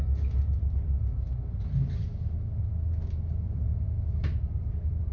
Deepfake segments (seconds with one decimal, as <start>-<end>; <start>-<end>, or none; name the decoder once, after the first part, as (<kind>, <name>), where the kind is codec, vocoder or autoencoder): none